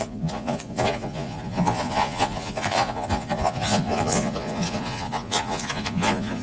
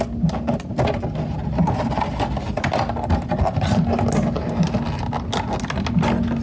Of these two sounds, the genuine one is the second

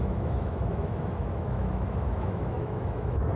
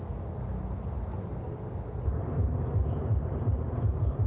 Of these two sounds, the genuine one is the second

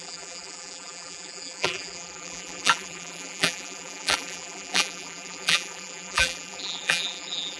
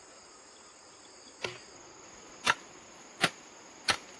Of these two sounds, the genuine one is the second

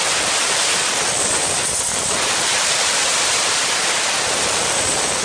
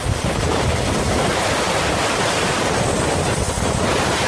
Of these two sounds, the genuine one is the first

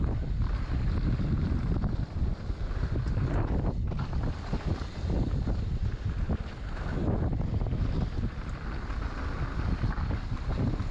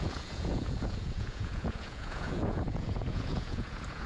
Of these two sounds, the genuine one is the first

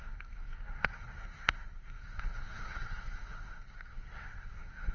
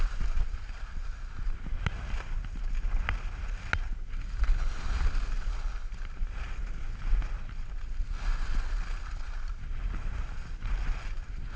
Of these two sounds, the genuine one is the second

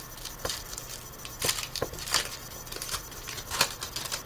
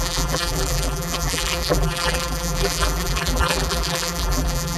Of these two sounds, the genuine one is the first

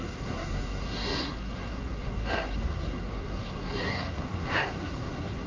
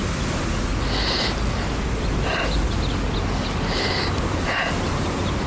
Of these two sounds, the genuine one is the second